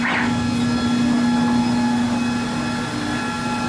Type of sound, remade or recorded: recorded